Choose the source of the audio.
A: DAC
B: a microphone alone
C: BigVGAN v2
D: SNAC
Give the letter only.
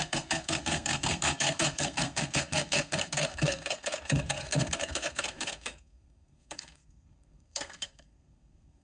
D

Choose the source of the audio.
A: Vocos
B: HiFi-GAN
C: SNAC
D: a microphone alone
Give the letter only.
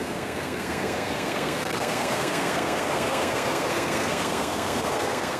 C